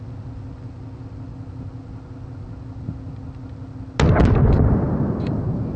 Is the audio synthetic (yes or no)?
no